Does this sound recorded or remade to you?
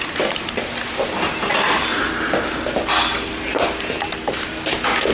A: recorded